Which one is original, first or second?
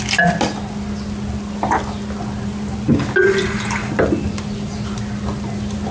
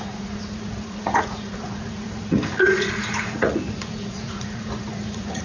first